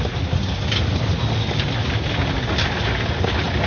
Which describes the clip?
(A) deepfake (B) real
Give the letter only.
B